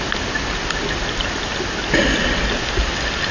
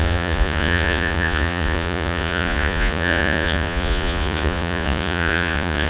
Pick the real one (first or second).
first